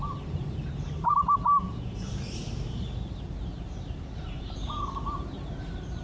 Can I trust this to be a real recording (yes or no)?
no